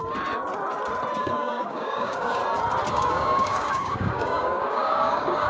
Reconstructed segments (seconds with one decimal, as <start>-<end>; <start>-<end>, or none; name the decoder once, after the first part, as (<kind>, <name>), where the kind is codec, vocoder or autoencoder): 1.2-2.4 (codec, DAC); 2.9-5.5